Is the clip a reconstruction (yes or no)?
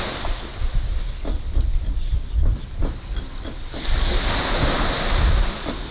no